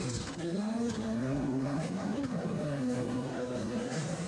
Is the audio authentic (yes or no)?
no